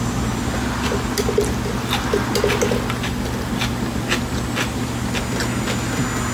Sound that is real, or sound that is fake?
real